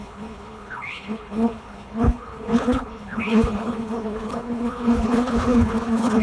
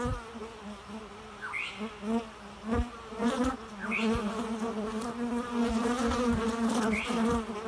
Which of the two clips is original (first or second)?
second